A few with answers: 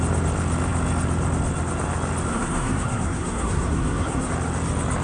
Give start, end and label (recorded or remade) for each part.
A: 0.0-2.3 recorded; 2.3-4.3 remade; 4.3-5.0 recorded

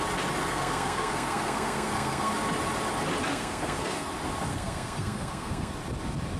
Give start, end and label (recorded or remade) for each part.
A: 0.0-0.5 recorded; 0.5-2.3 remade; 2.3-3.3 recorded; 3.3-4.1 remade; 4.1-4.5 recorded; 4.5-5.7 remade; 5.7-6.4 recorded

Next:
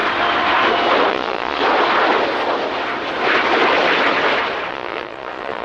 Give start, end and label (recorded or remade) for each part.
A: 0.0-1.1 recorded; 1.1-1.6 remade; 1.6-4.7 recorded; 4.7-5.6 remade

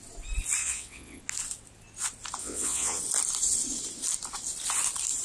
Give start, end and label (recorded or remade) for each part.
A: 0.0-0.6 recorded; 0.6-1.2 remade; 1.2-2.4 recorded; 2.4-3.0 remade; 3.0-5.2 recorded

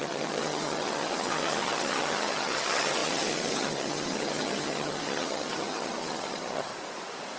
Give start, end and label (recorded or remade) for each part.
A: 0.0-6.7 remade; 6.7-7.4 recorded